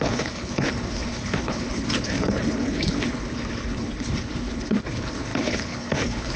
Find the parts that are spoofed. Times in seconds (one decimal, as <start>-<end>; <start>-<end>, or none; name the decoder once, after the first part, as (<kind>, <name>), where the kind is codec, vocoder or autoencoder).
0.0-6.4 (codec, HILCodec)